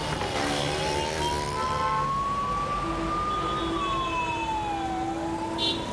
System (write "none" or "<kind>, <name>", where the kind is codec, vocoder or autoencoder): none